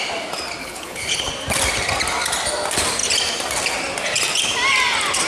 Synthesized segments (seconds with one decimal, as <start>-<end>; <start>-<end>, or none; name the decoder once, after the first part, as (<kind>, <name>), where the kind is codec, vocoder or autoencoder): 0.6-1.3 (codec, HILCodec)